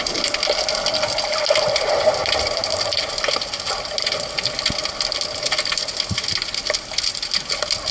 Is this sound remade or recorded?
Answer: recorded